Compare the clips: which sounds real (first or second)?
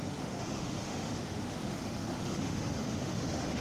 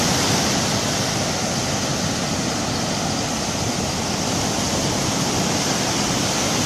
second